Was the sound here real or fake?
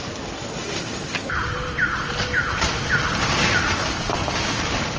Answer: real